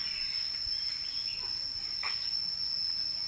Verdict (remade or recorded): recorded